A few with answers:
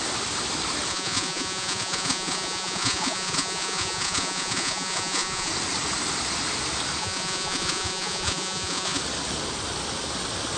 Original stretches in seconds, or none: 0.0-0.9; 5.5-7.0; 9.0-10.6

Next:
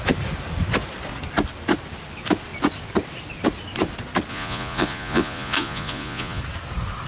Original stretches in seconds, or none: 0.0-4.3; 6.4-7.1